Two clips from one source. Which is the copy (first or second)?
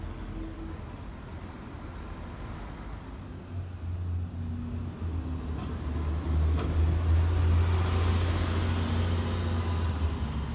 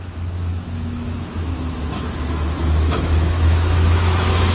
second